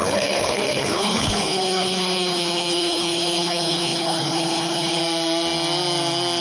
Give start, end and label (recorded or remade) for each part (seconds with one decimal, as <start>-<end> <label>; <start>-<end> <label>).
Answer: 0.0-5.0 remade; 5.0-6.4 recorded